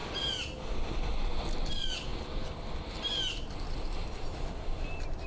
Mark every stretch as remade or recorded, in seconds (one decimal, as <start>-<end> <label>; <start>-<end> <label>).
0.0-5.3 recorded